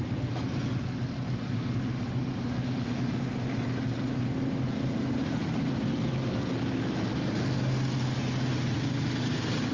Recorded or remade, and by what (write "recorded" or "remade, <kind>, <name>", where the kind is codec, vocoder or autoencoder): recorded